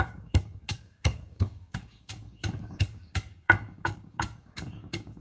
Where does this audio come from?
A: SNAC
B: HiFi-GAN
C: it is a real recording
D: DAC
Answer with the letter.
D